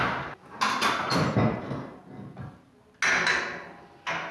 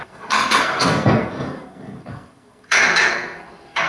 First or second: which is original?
first